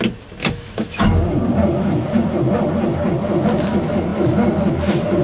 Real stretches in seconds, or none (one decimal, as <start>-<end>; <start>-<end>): 0.0-0.4; 1.0-5.2